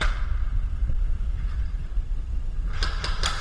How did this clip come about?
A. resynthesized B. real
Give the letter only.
B